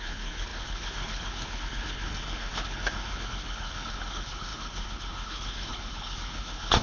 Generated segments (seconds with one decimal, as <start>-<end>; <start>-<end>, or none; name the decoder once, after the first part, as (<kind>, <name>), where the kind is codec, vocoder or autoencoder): 0.0-6.8 (codec, HILCodec)